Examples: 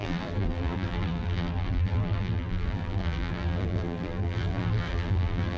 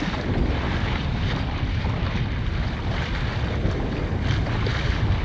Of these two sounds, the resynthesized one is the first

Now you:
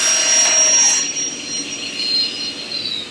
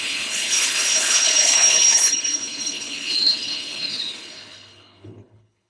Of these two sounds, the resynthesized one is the second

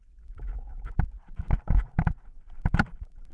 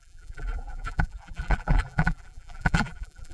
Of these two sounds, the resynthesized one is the second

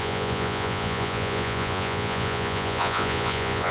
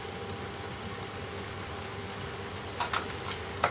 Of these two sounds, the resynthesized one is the first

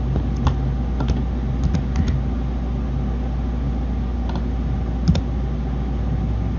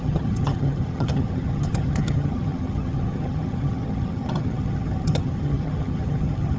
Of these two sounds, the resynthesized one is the second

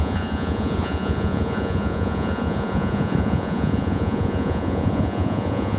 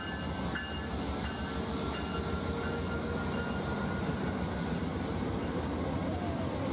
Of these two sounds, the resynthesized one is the first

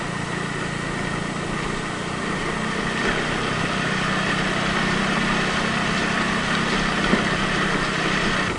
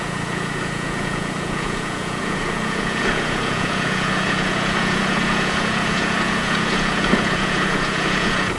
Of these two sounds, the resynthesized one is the second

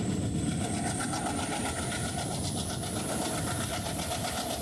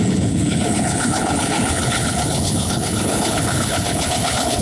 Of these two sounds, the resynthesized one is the second